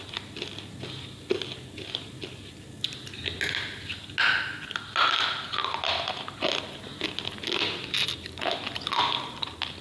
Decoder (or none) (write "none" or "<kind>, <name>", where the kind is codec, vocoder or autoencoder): none